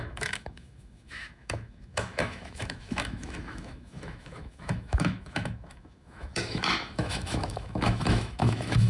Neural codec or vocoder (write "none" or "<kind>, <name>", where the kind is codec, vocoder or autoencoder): autoencoder, DAC-VAE